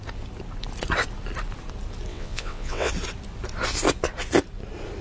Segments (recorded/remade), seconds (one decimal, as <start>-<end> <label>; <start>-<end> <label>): 0.0-2.1 recorded; 2.1-2.9 remade; 2.9-5.0 recorded

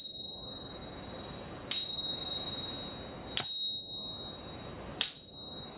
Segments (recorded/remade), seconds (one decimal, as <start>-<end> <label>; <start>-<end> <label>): 0.0-5.8 recorded